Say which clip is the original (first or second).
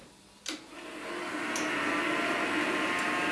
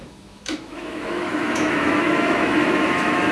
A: first